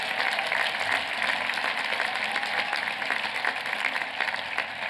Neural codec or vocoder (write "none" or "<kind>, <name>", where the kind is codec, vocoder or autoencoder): none